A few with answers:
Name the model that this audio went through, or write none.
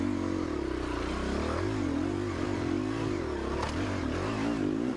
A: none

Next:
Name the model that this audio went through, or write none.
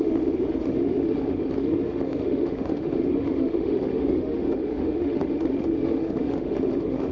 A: autoencoder, DAC-VAE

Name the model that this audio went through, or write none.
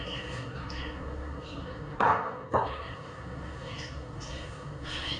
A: codec, SNAC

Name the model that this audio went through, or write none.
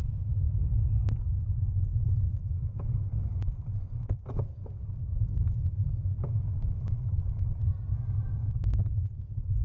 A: none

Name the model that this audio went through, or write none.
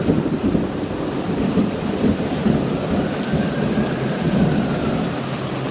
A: none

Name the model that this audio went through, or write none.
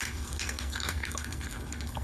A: codec, SNAC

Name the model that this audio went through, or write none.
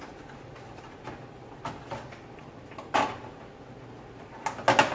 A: none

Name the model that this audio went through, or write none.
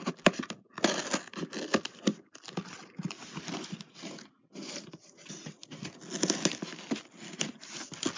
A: none